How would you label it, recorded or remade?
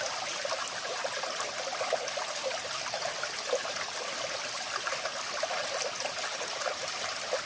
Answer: recorded